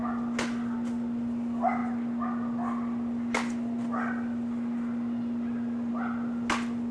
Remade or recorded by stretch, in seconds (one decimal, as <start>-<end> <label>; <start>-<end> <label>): 0.0-6.9 recorded